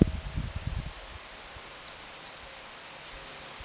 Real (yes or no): yes